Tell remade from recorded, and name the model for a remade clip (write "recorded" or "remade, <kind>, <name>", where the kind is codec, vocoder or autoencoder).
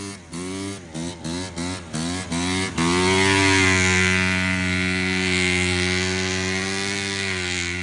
recorded